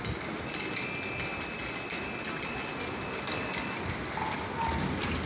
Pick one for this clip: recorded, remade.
recorded